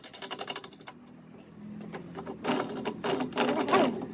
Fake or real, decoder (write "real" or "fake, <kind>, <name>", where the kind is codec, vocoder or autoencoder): real